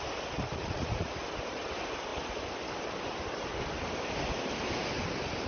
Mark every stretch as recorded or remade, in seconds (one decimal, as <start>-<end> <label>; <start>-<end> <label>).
0.0-0.6 recorded; 0.6-1.1 remade; 1.1-5.5 recorded